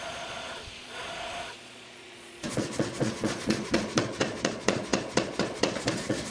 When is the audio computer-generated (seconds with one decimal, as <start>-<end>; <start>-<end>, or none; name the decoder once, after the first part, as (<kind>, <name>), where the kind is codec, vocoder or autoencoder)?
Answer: 0.0-6.3 (vocoder, Vocos)